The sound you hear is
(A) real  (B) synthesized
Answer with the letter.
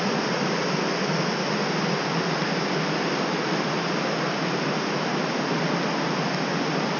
A